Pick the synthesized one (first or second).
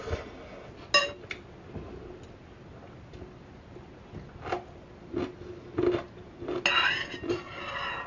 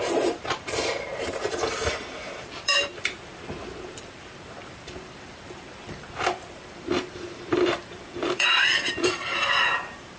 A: second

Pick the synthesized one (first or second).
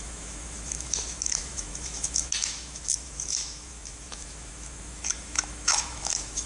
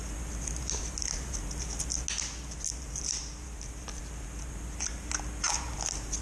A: first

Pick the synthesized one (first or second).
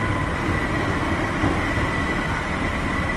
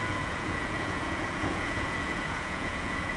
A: second